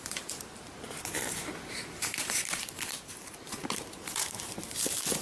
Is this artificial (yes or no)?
yes